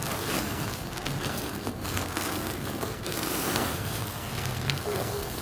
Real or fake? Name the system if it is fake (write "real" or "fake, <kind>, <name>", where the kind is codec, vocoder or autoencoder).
fake, codec, SNAC